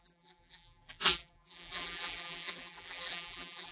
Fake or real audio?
fake